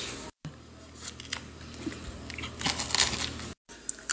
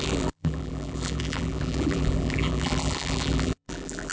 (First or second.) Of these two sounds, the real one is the first